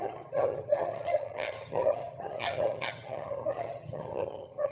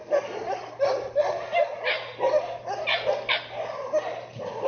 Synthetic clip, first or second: first